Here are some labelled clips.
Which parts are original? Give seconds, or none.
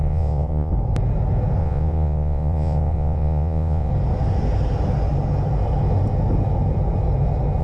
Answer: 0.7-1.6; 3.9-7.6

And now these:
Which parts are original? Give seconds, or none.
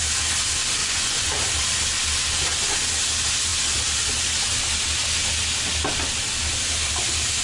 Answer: 0.0-0.8; 1.3-7.4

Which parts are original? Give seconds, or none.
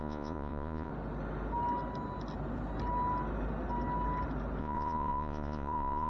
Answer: 0.9-4.6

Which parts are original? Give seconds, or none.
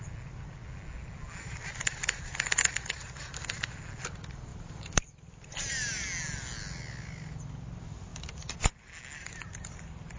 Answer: 0.0-10.2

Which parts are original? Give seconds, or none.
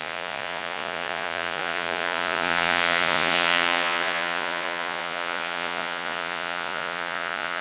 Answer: none